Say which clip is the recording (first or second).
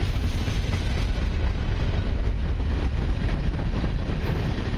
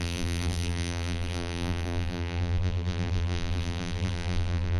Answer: first